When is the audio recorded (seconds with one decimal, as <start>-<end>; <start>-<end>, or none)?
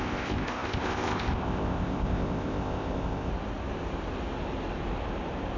3.3-5.6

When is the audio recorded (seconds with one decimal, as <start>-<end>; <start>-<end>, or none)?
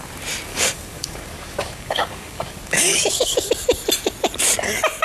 0.0-0.5; 3.5-5.0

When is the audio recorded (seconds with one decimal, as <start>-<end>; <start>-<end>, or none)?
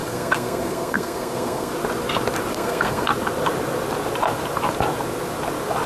1.7-2.5; 3.1-5.9